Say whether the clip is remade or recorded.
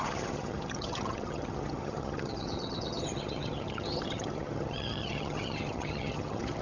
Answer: remade